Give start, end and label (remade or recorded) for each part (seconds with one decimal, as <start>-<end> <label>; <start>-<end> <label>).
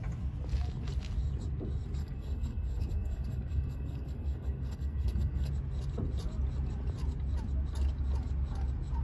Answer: 0.0-2.0 recorded; 2.0-5.5 remade; 5.5-9.0 recorded